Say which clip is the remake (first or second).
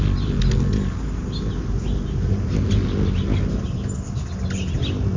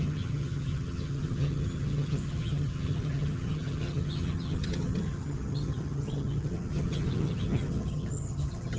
second